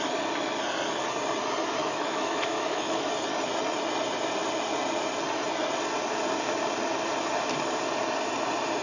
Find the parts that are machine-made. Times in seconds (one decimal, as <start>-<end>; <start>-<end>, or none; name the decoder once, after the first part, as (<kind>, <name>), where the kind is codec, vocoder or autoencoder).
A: 1.8-3.1 (autoencoder, DAC-VAE)

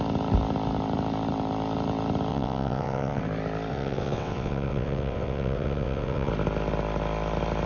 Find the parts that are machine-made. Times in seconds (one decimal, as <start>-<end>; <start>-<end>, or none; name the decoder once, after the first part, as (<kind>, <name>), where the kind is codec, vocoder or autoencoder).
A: 2.3-3.2 (vocoder, WaveNeXt); 3.7-6.3